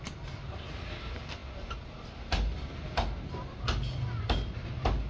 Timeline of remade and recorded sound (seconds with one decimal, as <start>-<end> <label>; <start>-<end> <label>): 0.0-5.1 recorded